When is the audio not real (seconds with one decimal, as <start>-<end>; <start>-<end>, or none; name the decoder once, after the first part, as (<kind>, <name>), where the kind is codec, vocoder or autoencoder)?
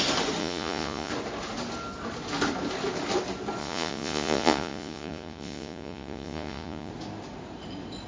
0.4-1.1 (vocoder, Vocos); 3.6-6.9